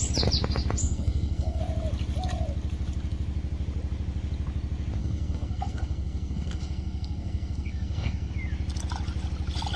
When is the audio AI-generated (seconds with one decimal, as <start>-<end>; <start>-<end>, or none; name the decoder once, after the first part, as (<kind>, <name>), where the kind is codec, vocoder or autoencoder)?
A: 0.8-1.6 (codec, SNAC); 5.0-8.3